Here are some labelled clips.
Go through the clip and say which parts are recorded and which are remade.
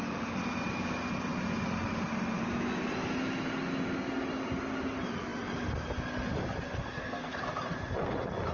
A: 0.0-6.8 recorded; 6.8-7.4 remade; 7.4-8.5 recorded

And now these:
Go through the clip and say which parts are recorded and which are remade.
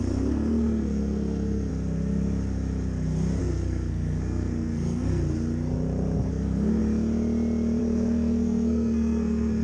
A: 0.0-1.7 remade; 1.7-3.4 recorded; 3.4-5.2 remade; 5.2-6.3 recorded; 6.3-6.8 remade; 6.8-7.8 recorded; 7.8-9.6 remade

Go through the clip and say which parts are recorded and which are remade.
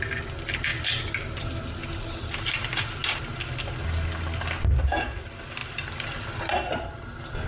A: 0.0-7.5 recorded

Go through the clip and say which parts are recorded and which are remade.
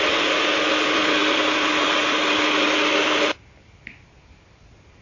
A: 0.0-5.0 recorded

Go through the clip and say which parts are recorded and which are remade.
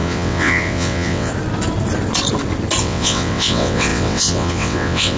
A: 0.0-1.3 remade; 1.3-2.8 recorded; 2.8-5.2 remade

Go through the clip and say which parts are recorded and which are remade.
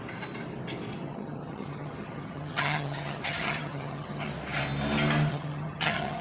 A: 0.0-0.9 recorded; 0.9-4.3 remade; 4.3-5.3 recorded; 5.3-6.2 remade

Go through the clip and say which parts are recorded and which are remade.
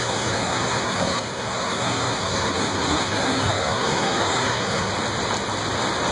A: 0.0-4.9 remade; 4.9-6.1 recorded